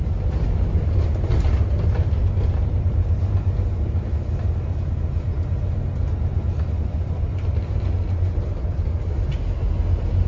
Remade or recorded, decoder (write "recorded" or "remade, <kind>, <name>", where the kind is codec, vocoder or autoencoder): recorded